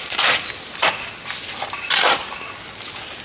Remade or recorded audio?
recorded